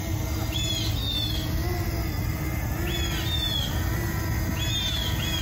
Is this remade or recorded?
recorded